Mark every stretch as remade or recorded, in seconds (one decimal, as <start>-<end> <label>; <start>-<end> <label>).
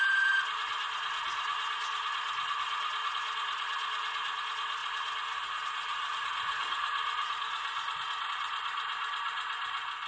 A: 0.0-10.1 recorded